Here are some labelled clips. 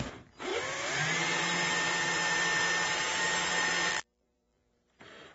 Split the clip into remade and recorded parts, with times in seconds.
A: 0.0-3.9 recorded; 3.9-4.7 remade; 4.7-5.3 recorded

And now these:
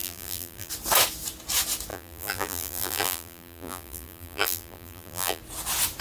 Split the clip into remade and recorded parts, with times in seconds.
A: 0.0-0.7 remade; 0.7-1.9 recorded; 1.9-5.4 remade; 5.4-6.0 recorded